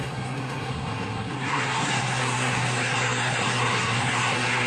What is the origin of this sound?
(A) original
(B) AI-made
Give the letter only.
B